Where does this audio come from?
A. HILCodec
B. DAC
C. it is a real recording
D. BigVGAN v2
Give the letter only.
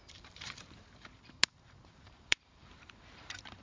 D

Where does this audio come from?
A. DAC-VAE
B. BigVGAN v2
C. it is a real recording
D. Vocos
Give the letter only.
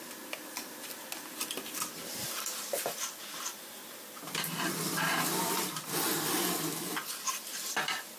C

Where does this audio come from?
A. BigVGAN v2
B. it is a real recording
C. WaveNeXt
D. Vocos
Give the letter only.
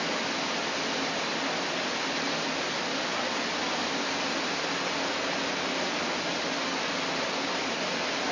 B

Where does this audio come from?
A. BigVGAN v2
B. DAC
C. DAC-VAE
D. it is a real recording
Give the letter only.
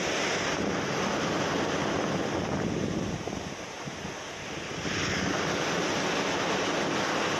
D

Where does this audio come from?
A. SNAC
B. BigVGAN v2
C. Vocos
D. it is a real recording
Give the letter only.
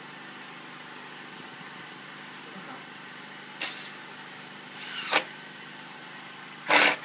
D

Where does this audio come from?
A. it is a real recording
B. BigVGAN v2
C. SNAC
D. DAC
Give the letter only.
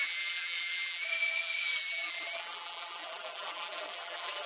B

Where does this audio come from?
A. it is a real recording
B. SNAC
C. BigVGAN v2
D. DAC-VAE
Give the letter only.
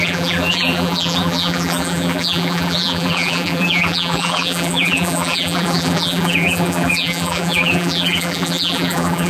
C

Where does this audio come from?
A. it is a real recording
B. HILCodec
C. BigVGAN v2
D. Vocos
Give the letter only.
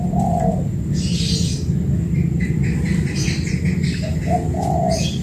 A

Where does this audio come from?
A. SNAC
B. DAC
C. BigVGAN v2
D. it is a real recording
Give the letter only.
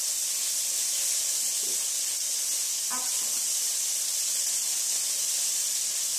D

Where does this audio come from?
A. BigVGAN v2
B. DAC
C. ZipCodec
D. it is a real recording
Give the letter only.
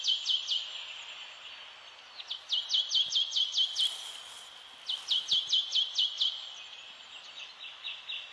D